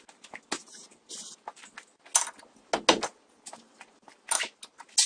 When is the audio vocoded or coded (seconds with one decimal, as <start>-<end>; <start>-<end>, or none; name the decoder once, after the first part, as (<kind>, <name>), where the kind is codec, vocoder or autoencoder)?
none